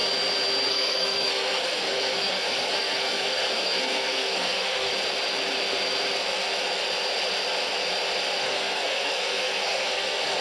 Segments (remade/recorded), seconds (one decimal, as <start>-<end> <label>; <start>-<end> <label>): 0.0-0.7 recorded; 0.7-4.9 remade; 4.9-8.4 recorded; 8.4-10.4 remade